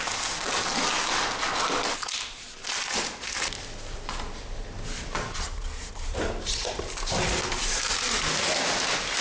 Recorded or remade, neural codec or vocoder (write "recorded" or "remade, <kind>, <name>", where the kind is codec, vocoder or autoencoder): recorded